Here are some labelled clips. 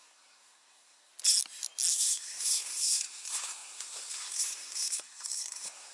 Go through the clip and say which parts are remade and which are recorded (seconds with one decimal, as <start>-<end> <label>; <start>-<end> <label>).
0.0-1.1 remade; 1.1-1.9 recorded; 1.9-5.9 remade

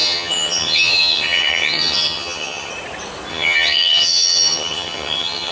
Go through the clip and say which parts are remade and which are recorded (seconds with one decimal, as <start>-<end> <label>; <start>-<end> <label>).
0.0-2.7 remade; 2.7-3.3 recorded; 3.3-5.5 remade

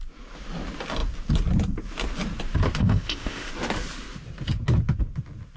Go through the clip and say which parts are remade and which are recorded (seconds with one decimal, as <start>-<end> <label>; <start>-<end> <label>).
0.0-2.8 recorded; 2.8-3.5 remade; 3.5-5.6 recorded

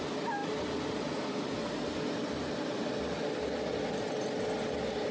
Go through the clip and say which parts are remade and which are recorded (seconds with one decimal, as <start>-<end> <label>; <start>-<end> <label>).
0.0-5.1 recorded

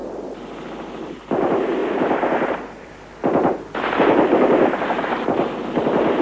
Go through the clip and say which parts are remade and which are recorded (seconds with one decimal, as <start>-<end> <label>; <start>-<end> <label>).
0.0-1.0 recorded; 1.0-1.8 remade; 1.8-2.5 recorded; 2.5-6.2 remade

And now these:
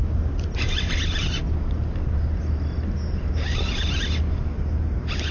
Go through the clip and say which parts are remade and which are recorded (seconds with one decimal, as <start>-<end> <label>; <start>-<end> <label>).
0.0-5.3 recorded

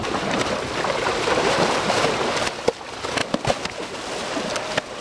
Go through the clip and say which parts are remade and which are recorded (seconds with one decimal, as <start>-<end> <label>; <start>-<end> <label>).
0.0-3.2 remade; 3.2-5.0 recorded

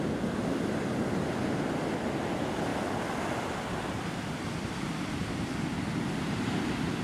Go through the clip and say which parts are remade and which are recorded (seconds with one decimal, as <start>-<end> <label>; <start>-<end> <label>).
0.0-7.0 recorded